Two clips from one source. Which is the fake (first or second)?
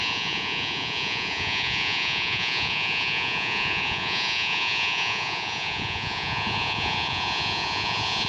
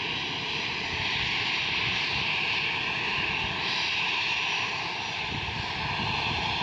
first